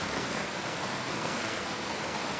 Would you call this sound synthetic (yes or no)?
yes